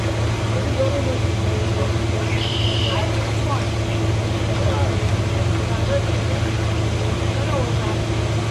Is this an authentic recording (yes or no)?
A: yes